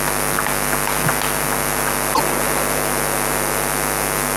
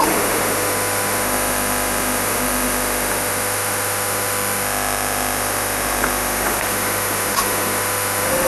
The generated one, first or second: second